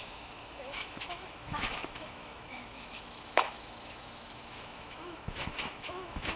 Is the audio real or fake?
fake